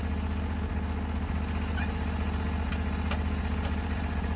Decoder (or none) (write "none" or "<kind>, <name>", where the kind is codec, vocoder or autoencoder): none